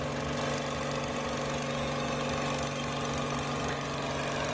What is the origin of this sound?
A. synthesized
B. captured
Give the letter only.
B